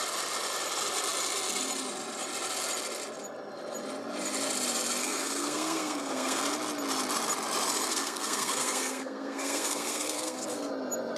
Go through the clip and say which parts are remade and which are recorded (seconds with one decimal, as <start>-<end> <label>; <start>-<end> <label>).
0.0-5.0 recorded; 5.0-6.4 remade; 6.4-7.9 recorded; 7.9-10.7 remade; 10.7-11.2 recorded